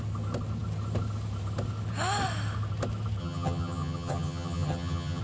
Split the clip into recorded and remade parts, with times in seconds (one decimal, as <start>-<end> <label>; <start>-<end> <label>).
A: 0.0-3.2 recorded; 3.2-5.2 remade